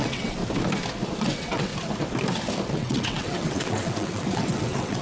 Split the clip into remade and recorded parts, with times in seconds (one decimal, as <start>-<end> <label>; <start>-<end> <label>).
0.0-0.4 remade; 0.4-1.2 recorded; 1.2-1.7 remade; 1.7-2.7 recorded; 2.7-5.0 remade